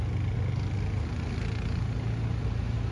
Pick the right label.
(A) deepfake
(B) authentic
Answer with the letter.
B